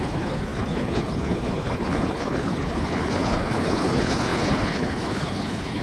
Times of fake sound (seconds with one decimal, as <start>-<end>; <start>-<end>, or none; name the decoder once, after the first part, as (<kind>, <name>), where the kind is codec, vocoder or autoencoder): 0.0-5.8 (codec, HILCodec)